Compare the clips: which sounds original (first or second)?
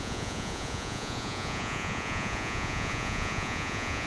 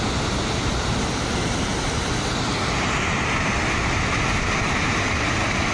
second